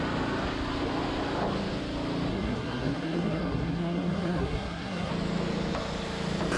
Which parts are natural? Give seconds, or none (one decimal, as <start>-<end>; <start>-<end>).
0.0-2.3; 5.1-6.6